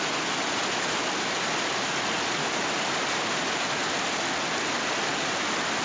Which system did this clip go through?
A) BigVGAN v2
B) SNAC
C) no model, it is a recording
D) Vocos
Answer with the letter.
C